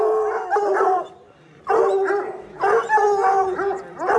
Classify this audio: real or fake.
real